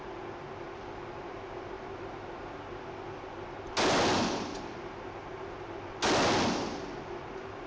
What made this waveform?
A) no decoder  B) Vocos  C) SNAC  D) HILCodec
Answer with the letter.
A